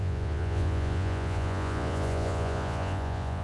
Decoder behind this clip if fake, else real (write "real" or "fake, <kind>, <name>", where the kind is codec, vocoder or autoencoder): fake, vocoder, Vocos